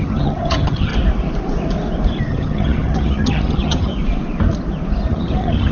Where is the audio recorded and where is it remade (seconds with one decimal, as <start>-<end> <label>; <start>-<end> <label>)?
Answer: 0.0-0.9 remade; 0.9-2.2 recorded; 2.2-3.9 remade; 3.9-5.1 recorded; 5.1-5.7 remade